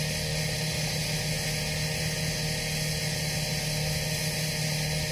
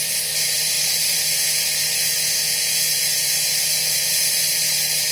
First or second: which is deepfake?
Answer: second